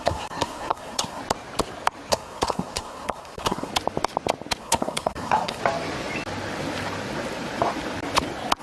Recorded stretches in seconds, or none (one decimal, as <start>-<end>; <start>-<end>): 1.2-2.1; 3.7-4.6; 5.6-8.6